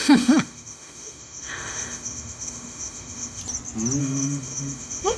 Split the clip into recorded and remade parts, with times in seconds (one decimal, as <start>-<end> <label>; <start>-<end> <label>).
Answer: 0.0-3.4 remade; 3.4-4.0 recorded; 4.0-5.2 remade

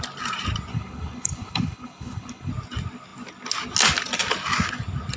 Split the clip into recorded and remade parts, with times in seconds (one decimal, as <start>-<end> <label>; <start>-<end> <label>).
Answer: 0.0-0.7 recorded; 0.7-2.5 remade; 2.5-5.2 recorded

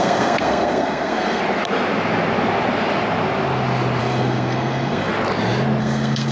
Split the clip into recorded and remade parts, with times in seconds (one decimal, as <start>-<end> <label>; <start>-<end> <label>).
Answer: 0.0-1.4 remade; 1.4-4.0 recorded; 4.0-5.1 remade; 5.1-5.8 recorded; 5.8-6.3 remade

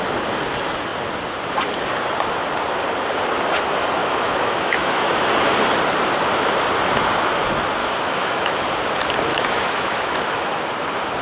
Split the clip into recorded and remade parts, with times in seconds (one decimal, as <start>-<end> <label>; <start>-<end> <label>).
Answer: 0.0-4.0 recorded; 4.0-5.2 remade; 5.2-7.8 recorded; 7.8-8.6 remade; 8.6-9.3 recorded; 9.3-10.5 remade; 10.5-11.2 recorded

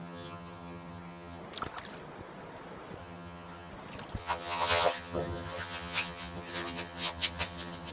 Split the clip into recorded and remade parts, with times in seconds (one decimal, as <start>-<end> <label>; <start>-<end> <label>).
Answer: 0.0-1.4 remade; 1.4-3.0 recorded; 3.0-3.7 remade; 3.7-4.2 recorded; 4.2-7.9 remade

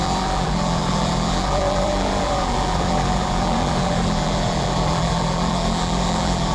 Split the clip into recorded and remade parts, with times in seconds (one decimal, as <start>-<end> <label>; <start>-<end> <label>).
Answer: 0.0-6.5 remade